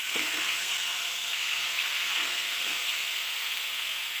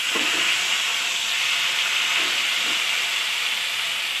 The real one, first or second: second